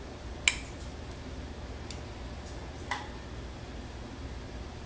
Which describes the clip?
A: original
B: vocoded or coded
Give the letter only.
A